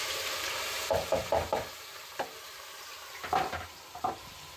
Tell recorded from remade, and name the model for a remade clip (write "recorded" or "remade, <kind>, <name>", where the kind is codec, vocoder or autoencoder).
remade, vocoder, BigVGAN v2